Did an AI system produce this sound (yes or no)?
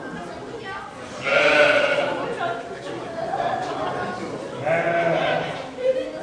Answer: no